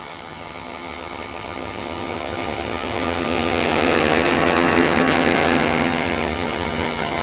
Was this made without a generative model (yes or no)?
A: no